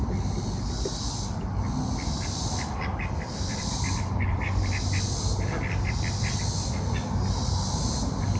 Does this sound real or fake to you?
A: real